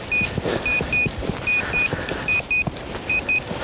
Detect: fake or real real